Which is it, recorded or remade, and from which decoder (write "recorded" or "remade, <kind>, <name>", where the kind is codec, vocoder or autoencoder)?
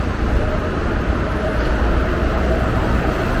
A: remade, vocoder, BigVGAN v2